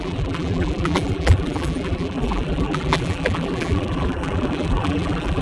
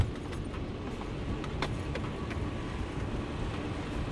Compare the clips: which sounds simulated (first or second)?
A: first